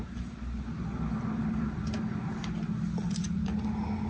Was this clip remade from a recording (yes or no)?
no